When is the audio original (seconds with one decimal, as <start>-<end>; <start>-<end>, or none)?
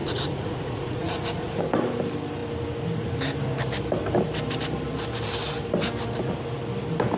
1.6-7.2